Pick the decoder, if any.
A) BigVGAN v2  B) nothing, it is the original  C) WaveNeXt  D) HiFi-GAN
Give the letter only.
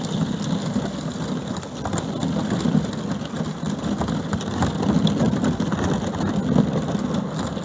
B